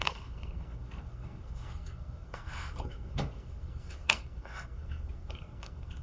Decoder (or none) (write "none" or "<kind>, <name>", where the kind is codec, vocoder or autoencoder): codec, SNAC